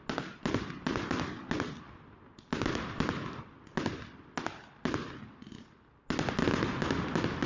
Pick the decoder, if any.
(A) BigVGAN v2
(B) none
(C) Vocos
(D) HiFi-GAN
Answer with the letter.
B